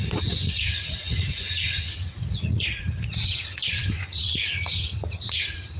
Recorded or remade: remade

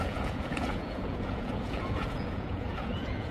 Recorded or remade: remade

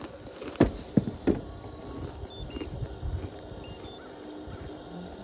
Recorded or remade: recorded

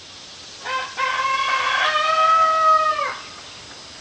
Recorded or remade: recorded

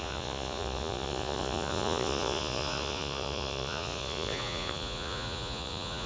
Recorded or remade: remade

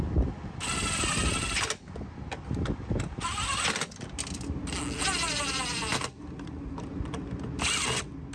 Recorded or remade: recorded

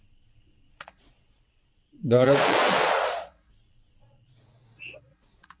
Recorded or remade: remade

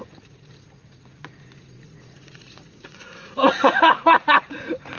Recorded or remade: remade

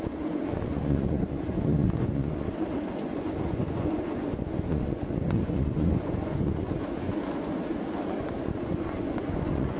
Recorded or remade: remade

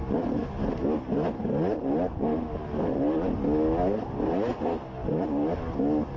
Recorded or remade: recorded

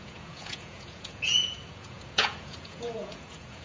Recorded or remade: remade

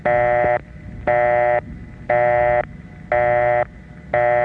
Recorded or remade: recorded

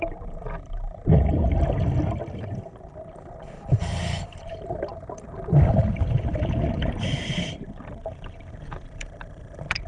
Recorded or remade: recorded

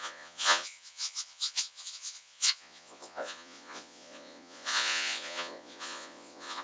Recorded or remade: remade